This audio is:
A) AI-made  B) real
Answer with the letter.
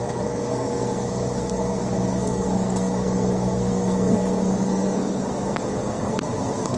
A